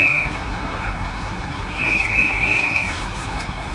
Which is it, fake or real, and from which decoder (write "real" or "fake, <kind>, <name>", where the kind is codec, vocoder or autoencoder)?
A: fake, codec, SNAC